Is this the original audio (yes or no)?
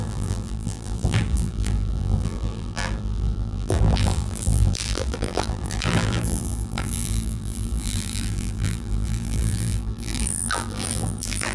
no